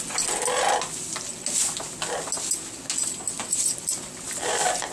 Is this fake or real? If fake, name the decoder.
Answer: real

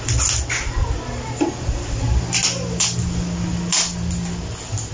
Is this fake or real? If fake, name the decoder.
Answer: real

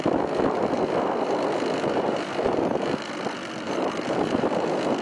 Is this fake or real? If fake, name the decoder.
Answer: real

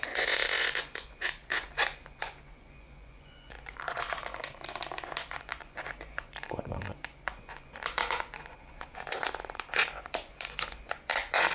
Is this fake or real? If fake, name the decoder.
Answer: fake, vocoder, Vocos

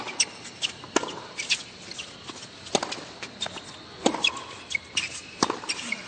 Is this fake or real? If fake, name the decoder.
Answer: real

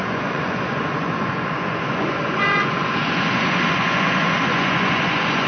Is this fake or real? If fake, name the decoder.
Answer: fake, vocoder, Vocos